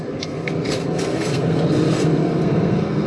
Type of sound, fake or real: fake